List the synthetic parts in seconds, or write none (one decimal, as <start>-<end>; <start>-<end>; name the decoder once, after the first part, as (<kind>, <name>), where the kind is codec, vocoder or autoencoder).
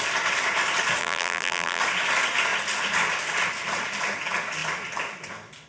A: 1.0-1.8 (vocoder, BigVGAN v2)